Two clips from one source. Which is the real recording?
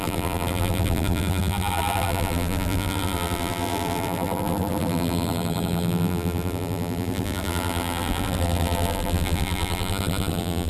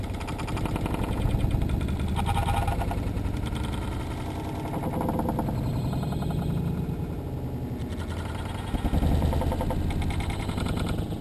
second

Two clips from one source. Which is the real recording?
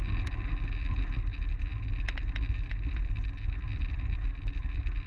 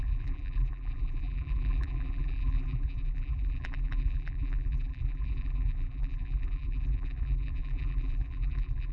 first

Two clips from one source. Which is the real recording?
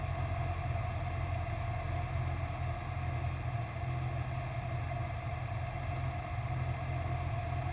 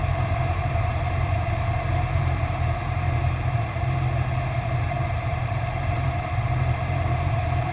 first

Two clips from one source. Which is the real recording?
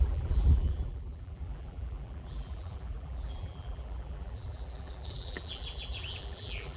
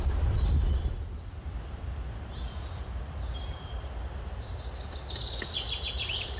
second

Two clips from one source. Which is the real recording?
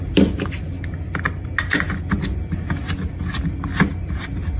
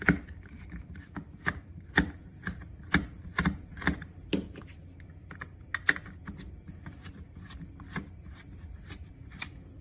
first